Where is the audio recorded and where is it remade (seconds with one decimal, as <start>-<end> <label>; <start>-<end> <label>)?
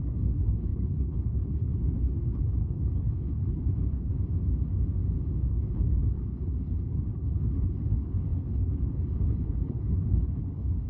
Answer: 0.0-4.1 remade; 4.1-5.5 recorded; 5.5-10.9 remade